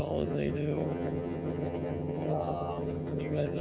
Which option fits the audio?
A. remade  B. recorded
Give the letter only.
A